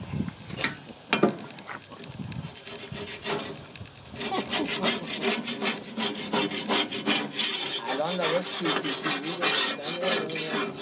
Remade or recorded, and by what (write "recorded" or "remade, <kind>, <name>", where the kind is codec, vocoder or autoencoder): recorded